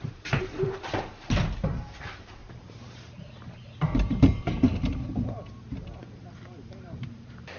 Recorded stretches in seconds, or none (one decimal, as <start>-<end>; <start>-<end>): 2.4-3.8; 4.7-6.6